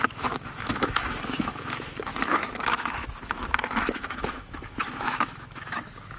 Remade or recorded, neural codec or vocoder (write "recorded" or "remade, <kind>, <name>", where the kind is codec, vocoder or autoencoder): remade, autoencoder, DAC-VAE